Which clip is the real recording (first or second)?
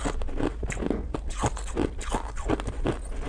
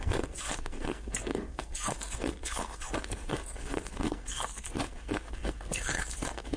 first